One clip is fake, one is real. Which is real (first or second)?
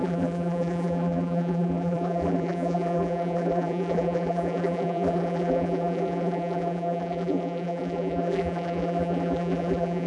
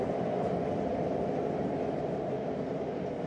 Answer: second